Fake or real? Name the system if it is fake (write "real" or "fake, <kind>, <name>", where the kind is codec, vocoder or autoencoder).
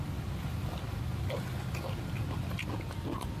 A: real